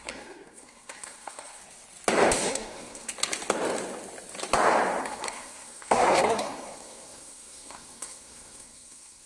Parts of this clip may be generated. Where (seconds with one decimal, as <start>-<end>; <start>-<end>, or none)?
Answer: 0.0-1.6; 2.5-3.1; 5.0-9.3